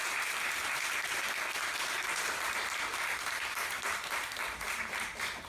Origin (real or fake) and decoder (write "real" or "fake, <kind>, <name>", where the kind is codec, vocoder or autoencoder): fake, vocoder, BigVGAN v2